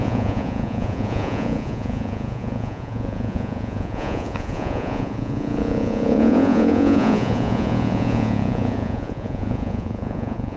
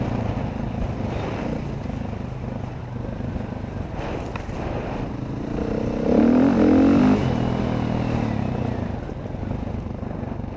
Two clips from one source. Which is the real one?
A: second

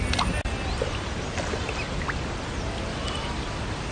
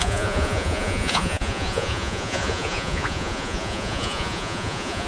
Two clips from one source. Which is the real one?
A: first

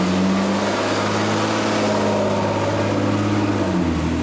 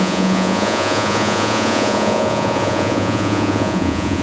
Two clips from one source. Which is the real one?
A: first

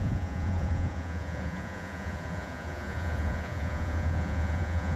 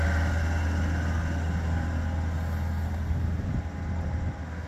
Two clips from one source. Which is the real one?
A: second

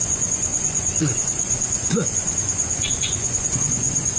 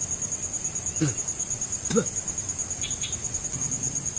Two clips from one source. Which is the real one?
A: second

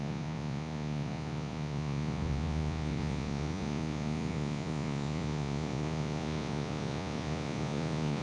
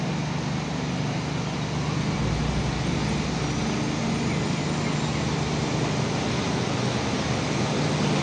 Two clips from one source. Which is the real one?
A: second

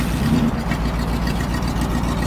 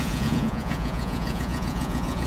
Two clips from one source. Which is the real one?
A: first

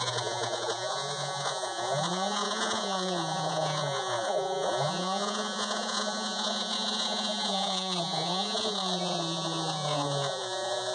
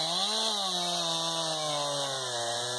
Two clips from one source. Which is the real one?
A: second